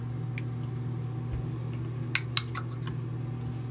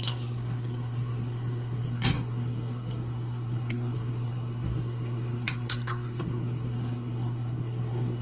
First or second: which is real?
first